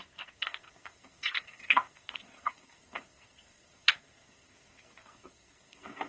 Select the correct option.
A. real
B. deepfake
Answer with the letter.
B